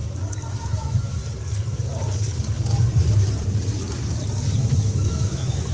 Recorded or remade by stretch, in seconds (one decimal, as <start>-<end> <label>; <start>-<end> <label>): 0.0-0.6 recorded; 0.6-1.2 remade; 1.2-4.6 recorded; 4.6-5.7 remade

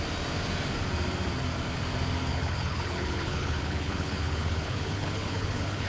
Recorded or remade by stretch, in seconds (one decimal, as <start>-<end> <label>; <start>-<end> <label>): 0.0-2.3 recorded; 2.3-5.9 remade

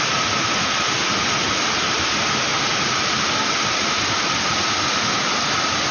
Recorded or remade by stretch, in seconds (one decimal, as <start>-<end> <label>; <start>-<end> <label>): 0.0-5.9 recorded